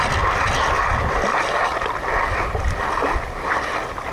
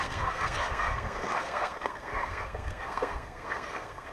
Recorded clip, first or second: first